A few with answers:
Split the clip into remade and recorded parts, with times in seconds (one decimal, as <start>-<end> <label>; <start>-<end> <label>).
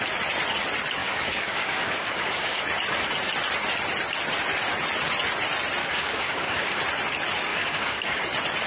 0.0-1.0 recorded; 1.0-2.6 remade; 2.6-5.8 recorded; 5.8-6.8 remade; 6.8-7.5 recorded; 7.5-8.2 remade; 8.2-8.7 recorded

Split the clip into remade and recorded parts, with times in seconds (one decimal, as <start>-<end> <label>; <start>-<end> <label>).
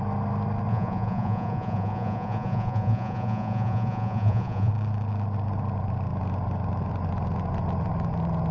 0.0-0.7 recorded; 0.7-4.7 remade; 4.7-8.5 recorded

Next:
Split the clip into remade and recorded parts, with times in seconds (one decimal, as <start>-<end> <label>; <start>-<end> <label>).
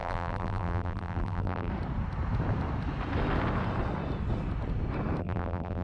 0.0-1.7 remade; 1.7-5.2 recorded; 5.2-5.8 remade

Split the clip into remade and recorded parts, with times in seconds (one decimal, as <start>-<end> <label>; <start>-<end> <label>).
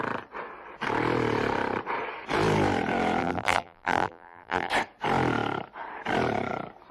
0.0-3.2 recorded; 3.2-4.7 remade; 4.7-6.9 recorded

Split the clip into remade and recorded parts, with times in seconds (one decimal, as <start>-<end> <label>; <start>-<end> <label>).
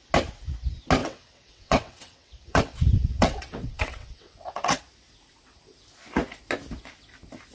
0.0-1.0 recorded; 1.0-4.8 remade; 4.8-7.5 recorded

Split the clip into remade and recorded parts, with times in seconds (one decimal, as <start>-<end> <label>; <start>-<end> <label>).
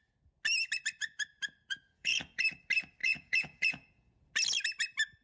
0.0-1.0 recorded; 1.0-2.4 remade; 2.4-3.0 recorded; 3.0-4.3 remade; 4.3-5.2 recorded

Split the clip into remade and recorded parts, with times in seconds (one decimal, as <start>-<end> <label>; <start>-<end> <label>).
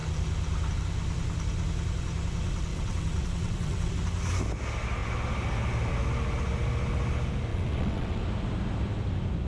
0.0-2.7 recorded; 2.7-3.9 remade; 3.9-7.5 recorded; 7.5-8.2 remade; 8.2-9.5 recorded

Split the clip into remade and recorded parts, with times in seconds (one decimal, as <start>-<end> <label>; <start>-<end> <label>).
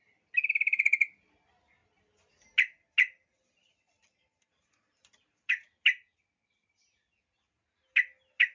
0.0-8.5 recorded